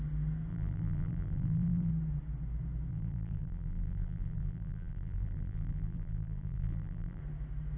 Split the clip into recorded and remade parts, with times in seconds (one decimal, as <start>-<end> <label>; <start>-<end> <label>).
0.0-0.5 recorded; 0.5-1.9 remade; 1.9-2.9 recorded; 2.9-7.2 remade; 7.2-7.8 recorded